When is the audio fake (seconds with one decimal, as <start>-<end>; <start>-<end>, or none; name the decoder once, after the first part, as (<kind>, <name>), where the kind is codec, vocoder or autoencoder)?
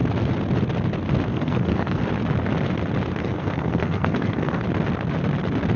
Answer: 1.3-2.0 (codec, SNAC); 3.2-4.6